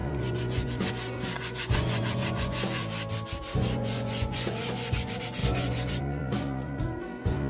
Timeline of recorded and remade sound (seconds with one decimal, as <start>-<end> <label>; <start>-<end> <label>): 0.0-2.8 remade; 2.8-3.4 recorded; 3.4-7.5 remade